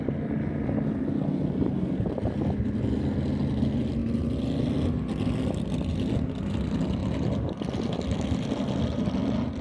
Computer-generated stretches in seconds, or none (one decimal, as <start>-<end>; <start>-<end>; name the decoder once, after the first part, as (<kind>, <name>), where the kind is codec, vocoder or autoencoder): 7.0-8.0 (vocoder, BigVGAN v2)